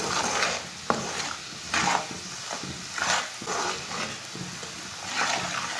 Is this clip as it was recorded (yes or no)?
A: yes